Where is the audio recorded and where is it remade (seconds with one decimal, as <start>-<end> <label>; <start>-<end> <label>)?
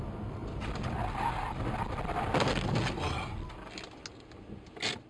0.0-5.1 recorded